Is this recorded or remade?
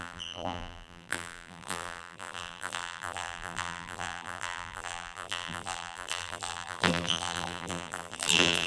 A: remade